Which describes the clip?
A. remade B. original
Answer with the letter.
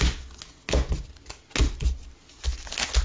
B